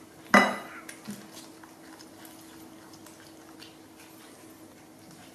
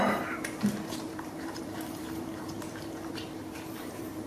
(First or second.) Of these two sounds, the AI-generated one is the second